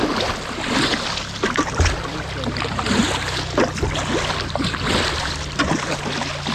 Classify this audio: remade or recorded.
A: recorded